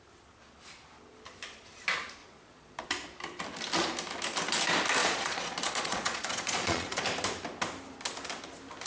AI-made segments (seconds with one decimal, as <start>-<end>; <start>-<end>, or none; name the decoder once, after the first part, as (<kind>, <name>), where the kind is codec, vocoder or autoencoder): 2.2-2.8 (vocoder, Vocos); 5.0-7.0